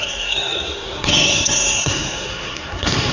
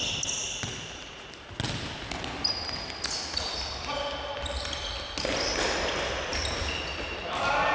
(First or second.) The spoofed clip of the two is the first